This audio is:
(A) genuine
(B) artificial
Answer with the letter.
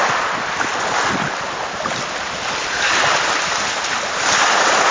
A